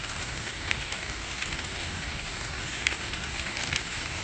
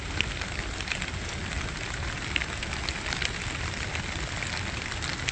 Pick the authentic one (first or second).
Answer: second